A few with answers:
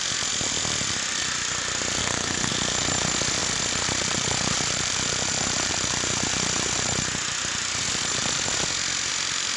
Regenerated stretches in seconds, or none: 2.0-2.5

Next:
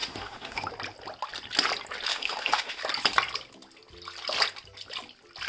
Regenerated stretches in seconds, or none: 0.0-0.7; 2.1-2.8

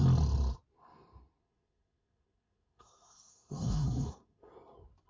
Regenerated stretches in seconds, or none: 1.4-4.5